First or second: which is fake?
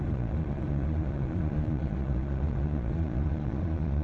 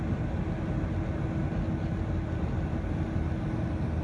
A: first